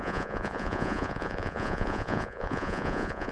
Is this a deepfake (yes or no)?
yes